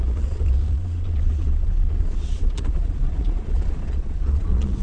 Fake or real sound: fake